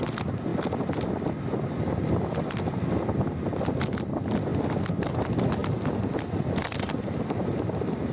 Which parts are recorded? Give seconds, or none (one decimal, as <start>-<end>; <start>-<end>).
0.0-0.5; 2.6-8.1